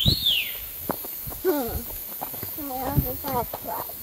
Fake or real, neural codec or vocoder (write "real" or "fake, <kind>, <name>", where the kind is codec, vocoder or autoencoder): fake, codec, DAC